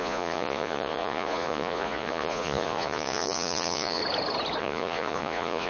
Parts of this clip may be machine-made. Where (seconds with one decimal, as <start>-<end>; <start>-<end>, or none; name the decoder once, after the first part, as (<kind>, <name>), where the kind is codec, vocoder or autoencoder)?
0.0-4.0 (vocoder, Vocos); 4.6-5.7